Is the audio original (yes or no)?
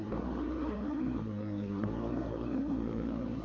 no